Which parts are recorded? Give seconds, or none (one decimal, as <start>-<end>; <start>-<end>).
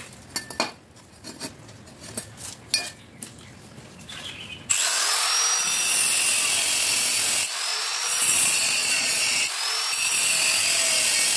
0.0-7.7; 9.5-11.4